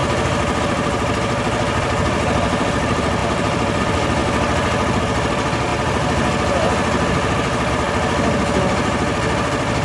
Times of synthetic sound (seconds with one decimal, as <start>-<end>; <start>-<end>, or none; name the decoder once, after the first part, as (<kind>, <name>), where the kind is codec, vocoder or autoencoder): 0.6-4.2 (vocoder, BigVGAN v2); 5.0-5.7; 7.7-9.8